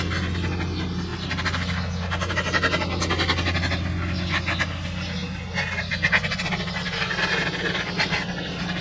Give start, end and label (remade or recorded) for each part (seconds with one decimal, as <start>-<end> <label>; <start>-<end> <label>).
0.0-8.8 recorded